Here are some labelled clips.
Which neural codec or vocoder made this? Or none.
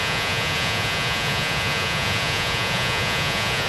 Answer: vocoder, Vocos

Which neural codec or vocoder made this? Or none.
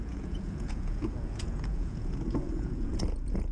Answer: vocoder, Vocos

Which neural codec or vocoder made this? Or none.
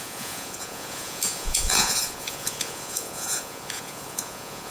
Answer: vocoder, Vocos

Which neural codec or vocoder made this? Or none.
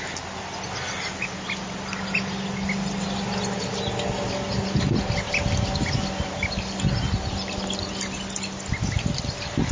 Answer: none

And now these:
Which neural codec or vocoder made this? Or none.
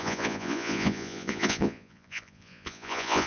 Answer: vocoder, Vocos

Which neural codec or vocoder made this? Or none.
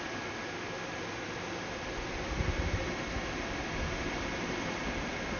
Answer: none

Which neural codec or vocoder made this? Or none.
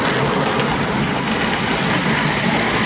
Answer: none